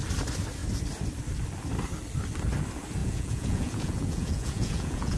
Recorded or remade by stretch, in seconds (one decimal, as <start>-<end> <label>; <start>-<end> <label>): 0.0-3.0 recorded; 3.0-5.2 remade